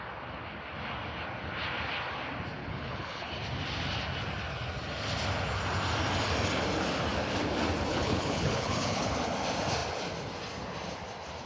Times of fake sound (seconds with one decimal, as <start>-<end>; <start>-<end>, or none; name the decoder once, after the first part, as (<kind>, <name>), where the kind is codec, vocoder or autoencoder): 2.6-3.3 (codec, HILCodec); 7.9-9.1